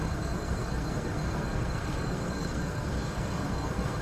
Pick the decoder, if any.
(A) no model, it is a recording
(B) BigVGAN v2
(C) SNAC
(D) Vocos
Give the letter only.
C